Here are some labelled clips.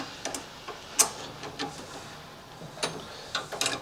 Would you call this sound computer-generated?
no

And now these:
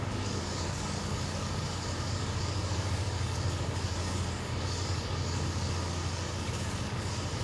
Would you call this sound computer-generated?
yes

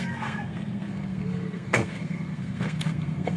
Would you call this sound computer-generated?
yes